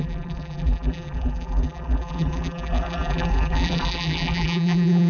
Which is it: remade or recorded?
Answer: remade